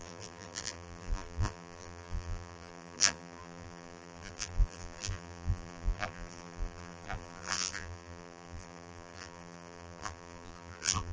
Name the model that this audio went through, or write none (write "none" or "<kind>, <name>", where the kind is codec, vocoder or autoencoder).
vocoder, BigVGAN v2